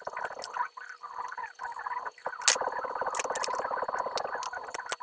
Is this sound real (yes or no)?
yes